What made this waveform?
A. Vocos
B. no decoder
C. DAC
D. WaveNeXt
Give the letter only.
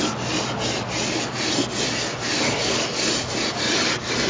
B